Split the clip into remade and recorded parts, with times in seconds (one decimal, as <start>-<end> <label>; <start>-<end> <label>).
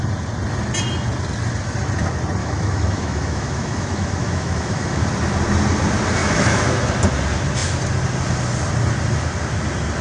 0.0-2.4 recorded; 2.4-5.0 remade; 5.0-6.2 recorded; 6.2-6.9 remade; 6.9-10.0 recorded